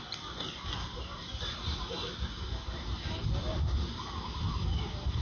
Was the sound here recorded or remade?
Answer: recorded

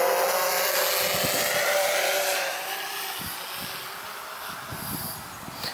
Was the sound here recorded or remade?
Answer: recorded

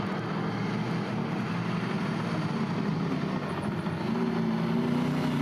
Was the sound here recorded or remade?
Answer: recorded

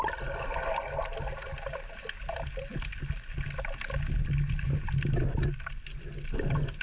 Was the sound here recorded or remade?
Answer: recorded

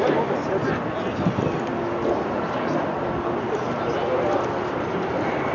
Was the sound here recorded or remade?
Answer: recorded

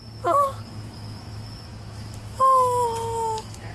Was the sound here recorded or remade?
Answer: remade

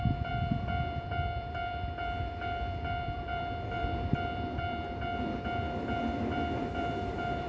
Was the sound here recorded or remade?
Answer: remade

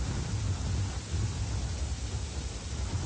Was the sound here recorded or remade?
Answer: recorded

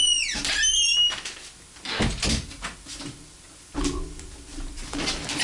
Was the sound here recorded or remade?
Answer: recorded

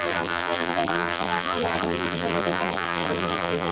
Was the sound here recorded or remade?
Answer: remade